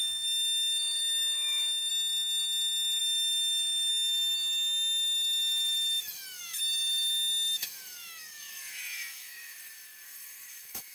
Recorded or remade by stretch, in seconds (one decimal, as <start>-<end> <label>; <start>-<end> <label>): 0.0-10.9 remade

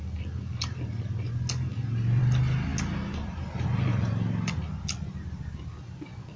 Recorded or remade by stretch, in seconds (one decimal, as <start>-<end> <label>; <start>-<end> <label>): 0.0-6.4 recorded

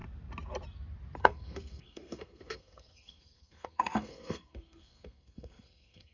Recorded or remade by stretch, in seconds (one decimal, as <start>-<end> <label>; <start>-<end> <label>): 0.0-1.2 recorded; 1.2-6.1 remade

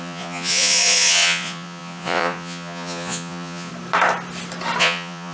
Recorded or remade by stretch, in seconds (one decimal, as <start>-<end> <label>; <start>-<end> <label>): 0.0-3.7 remade; 3.7-4.8 recorded; 4.8-5.3 remade

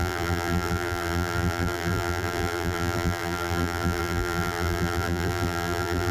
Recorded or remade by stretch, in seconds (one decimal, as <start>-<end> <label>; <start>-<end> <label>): 0.0-6.1 remade